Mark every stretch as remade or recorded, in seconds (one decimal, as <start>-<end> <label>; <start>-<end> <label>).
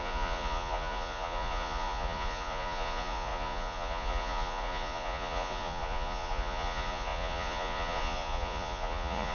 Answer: 0.0-9.3 remade